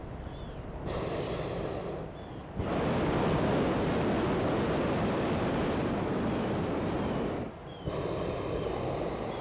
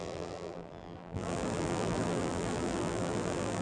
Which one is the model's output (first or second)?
second